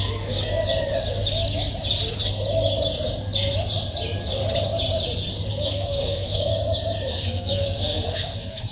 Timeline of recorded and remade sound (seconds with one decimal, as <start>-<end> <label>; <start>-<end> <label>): 0.0-0.5 remade; 0.5-5.5 recorded; 5.5-6.5 remade; 6.5-7.1 recorded; 7.1-8.7 remade